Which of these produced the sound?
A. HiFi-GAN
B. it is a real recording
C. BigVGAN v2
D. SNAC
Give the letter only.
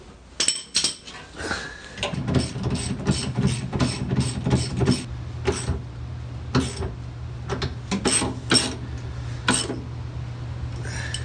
B